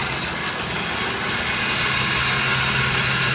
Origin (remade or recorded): recorded